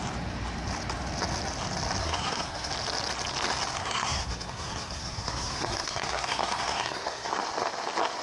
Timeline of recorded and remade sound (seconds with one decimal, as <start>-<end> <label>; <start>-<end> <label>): 0.0-2.0 recorded; 2.0-2.7 remade; 2.7-3.8 recorded; 3.8-7.3 remade; 7.3-8.2 recorded